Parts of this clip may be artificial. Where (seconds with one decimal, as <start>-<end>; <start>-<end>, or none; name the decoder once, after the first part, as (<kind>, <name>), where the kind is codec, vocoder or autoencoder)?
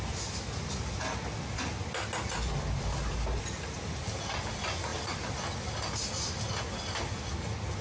4.9-5.4 (vocoder, BigVGAN v2)